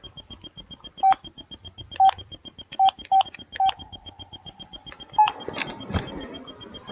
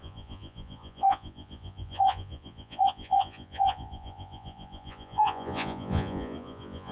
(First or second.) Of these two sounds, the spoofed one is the second